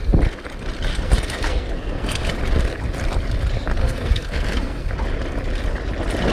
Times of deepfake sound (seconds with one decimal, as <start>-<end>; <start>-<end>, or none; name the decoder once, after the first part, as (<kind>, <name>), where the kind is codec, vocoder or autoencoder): 0.9-2.4 (codec, SNAC); 3.8-4.9